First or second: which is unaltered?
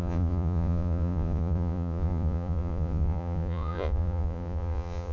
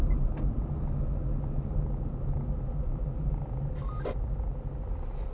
second